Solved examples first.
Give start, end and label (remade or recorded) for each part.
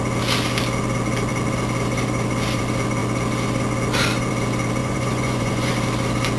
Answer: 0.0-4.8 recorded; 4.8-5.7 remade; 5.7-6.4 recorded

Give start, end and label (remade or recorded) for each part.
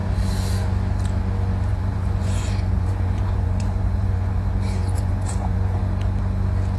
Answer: 0.0-1.7 recorded; 1.7-5.8 remade; 5.8-6.8 recorded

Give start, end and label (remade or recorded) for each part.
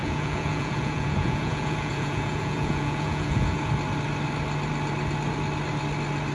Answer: 0.0-3.7 remade; 3.7-6.3 recorded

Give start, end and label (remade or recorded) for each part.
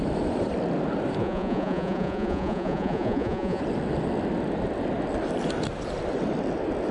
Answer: 0.0-1.2 recorded; 1.2-3.6 remade; 3.6-6.9 recorded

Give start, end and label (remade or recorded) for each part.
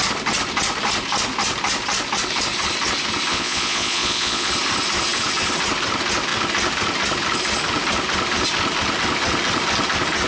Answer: 0.0-3.3 recorded; 3.3-4.5 remade; 4.5-10.3 recorded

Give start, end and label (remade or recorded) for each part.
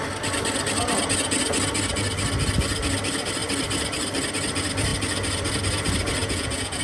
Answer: 0.0-6.2 recorded; 6.2-6.8 remade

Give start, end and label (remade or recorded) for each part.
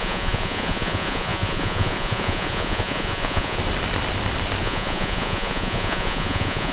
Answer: 0.0-3.6 remade; 3.6-4.6 recorded; 4.6-6.7 remade